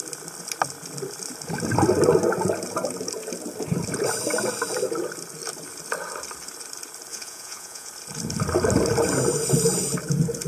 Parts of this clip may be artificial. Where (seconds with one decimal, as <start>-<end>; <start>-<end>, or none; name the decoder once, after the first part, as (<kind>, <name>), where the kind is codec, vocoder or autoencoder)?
7.1-7.9 (vocoder, Vocos)

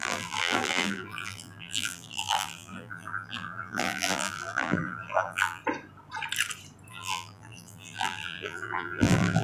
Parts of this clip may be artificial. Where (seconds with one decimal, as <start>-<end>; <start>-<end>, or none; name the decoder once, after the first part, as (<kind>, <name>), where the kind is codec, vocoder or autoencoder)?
0.0-5.6 (vocoder, BigVGAN v2); 6.9-9.4

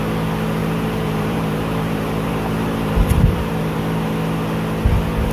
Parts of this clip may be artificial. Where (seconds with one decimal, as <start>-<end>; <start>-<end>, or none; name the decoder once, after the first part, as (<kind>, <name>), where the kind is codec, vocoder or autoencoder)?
0.6-3.8 (vocoder, BigVGAN v2)

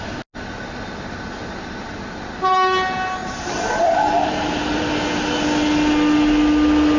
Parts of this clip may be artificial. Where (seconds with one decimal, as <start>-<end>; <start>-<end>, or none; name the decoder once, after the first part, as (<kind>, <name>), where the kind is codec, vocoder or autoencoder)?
3.2-4.9 (vocoder, BigVGAN v2)

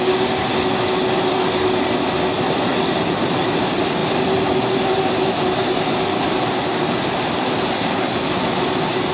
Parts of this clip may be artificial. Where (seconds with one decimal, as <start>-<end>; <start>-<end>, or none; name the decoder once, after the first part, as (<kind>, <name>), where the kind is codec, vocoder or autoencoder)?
none

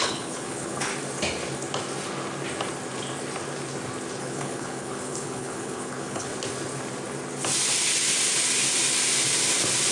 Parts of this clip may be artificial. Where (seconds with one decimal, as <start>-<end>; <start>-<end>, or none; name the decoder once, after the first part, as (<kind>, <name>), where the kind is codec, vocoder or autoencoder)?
0.0-0.9 (codec, HILCodec); 4.2-6.3

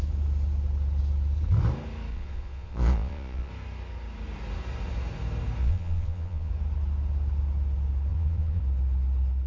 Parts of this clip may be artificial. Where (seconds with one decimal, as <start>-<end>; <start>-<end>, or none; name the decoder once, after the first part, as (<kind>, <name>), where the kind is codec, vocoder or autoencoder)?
2.1-3.5 (vocoder, Vocos); 5.6-6.5; 8.1-8.6

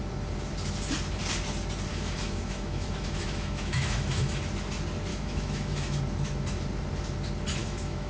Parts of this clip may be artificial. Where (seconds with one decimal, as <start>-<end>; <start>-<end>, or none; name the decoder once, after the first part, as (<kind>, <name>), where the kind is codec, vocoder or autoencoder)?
1.9-4.4 (autoencoder, DAC-VAE); 5.1-6.0; 7.6-8.1